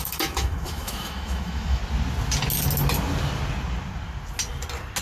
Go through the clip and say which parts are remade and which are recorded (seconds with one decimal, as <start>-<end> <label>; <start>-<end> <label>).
0.0-1.8 remade; 1.8-5.0 recorded

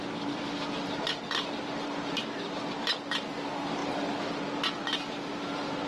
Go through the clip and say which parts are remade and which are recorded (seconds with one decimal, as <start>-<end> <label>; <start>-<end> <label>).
0.0-5.9 recorded

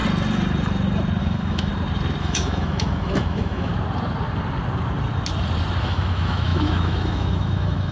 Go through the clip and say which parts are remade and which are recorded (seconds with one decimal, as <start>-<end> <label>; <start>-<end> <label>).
0.0-1.2 recorded; 1.2-1.7 remade; 1.7-2.2 recorded; 2.2-3.7 remade; 3.7-5.8 recorded; 5.8-7.9 remade

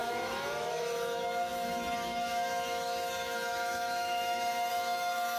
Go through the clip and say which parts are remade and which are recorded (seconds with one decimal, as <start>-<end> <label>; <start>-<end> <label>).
0.0-5.4 remade

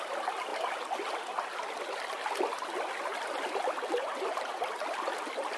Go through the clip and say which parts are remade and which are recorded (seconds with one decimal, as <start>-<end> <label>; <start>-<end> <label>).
0.0-5.6 recorded